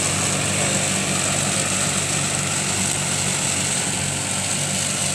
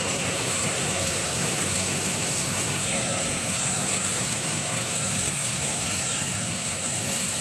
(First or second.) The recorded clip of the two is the first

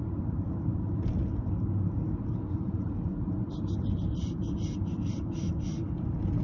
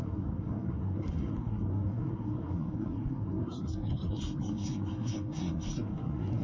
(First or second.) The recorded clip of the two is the first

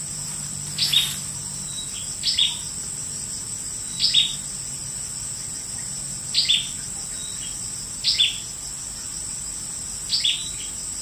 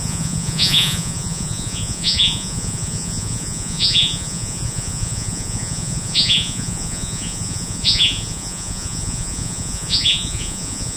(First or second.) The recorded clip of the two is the first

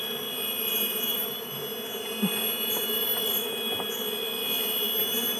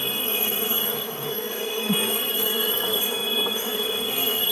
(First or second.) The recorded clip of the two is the first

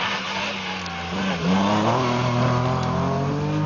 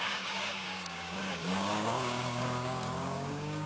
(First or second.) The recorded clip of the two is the first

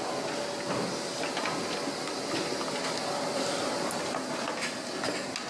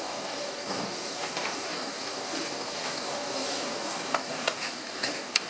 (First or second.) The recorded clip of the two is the first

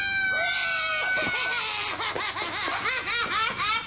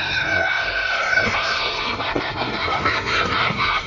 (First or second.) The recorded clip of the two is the first